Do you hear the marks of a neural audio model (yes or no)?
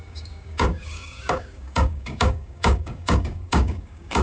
yes